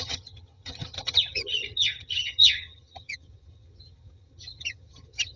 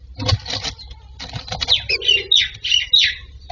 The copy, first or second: first